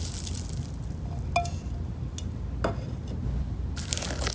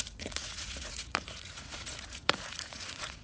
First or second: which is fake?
second